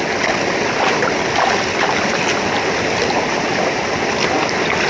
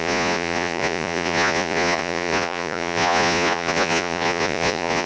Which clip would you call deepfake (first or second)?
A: second